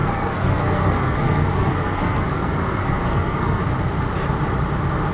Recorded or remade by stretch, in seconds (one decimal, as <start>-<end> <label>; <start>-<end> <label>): 0.0-3.6 remade; 3.6-5.1 recorded